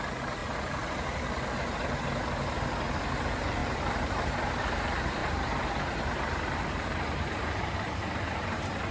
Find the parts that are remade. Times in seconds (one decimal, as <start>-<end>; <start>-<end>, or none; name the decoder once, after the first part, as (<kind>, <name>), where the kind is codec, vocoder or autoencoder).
0.4-1.3 (vocoder, BigVGAN v2); 3.6-4.6; 5.2-8.9